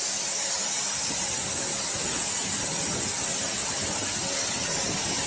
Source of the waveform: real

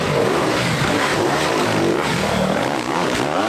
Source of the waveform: fake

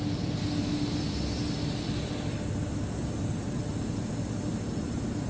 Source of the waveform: real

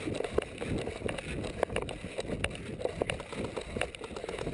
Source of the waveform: real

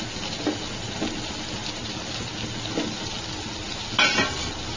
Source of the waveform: real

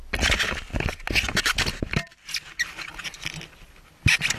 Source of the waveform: real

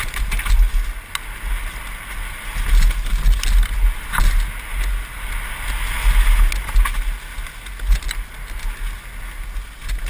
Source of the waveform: real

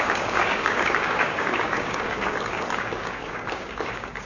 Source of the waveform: fake